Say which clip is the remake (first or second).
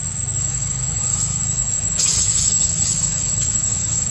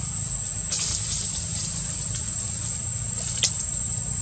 first